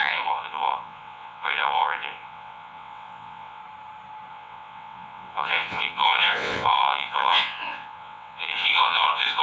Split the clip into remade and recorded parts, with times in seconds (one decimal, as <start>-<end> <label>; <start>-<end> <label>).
0.0-3.6 remade; 3.6-4.3 recorded; 4.3-9.4 remade